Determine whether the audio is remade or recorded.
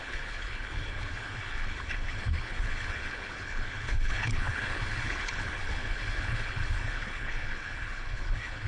remade